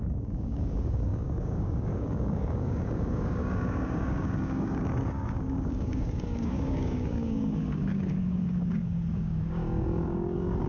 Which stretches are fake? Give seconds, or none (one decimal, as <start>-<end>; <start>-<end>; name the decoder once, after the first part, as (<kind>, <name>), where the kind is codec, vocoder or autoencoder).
0.0-10.7 (codec, DAC)